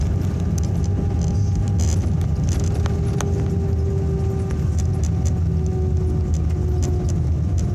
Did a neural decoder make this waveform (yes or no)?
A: no